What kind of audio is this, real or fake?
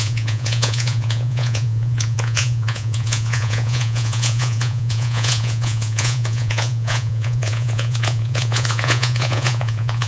fake